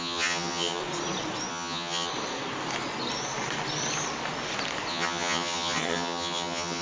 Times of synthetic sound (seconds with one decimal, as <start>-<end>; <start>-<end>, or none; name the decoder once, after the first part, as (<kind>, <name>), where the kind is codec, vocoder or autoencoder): 0.0-0.8 (vocoder, HiFi-GAN); 1.5-2.1; 4.9-6.8